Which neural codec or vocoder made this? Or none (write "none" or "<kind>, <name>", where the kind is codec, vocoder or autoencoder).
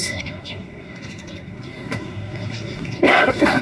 codec, SNAC